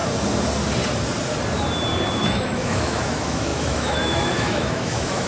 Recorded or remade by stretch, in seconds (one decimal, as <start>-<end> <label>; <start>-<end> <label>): 0.0-2.1 recorded; 2.1-5.3 remade